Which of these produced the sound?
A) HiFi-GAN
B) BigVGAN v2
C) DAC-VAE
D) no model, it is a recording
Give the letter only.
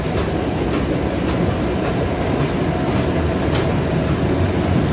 D